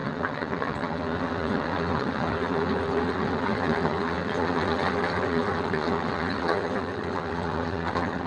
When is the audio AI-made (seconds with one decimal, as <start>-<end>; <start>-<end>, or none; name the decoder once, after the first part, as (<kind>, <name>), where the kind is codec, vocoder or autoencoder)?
0.0-8.3 (vocoder, WaveNeXt)